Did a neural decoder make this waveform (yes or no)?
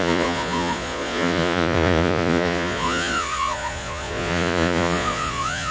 yes